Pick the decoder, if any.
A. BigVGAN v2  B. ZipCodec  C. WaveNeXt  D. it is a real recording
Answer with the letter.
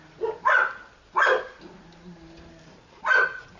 D